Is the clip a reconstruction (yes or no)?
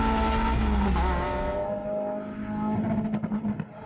no